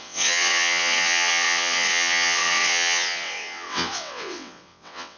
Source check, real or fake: fake